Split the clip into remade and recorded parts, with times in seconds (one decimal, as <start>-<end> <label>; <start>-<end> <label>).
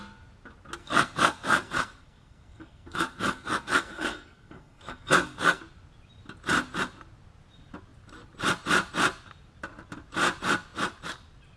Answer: 0.0-0.8 recorded; 0.8-5.6 remade; 5.6-11.6 recorded